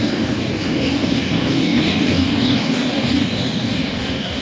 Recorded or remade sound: remade